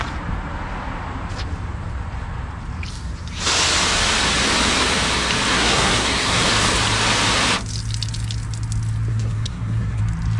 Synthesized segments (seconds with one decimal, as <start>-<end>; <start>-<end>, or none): 5.5-6.4; 9.1-10.0